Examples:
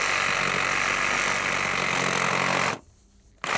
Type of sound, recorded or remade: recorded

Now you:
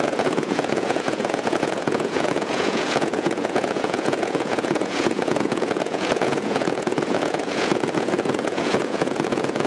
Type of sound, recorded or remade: remade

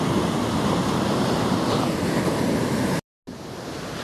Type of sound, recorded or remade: recorded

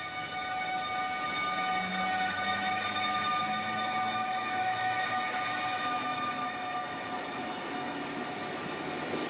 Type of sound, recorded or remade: remade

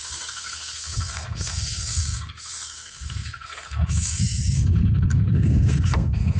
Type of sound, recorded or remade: remade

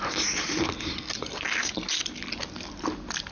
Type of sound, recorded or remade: recorded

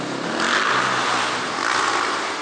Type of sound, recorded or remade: recorded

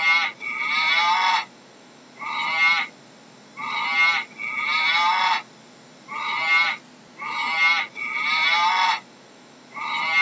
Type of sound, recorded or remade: recorded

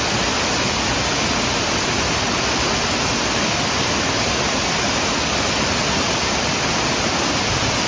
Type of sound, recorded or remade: recorded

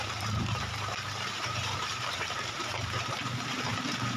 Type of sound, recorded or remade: remade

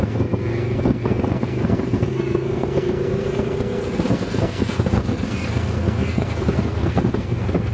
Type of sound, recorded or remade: remade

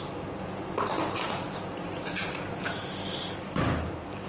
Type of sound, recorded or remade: recorded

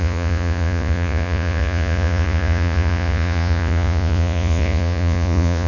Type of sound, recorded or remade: remade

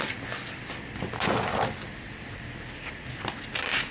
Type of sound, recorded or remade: recorded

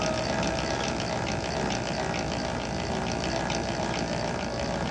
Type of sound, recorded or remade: recorded